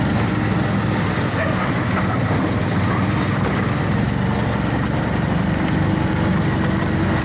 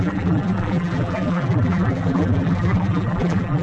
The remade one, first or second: second